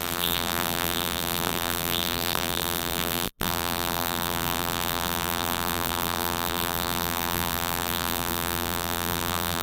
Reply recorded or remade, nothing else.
remade